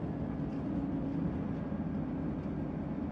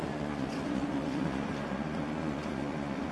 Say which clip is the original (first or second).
first